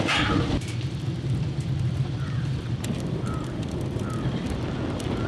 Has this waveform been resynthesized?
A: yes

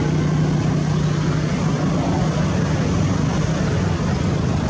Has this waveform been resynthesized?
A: no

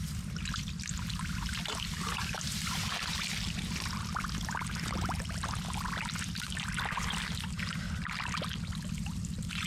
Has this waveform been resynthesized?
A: no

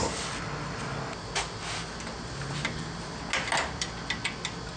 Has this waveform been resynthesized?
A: no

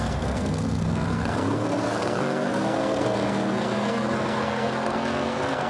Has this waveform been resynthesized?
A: yes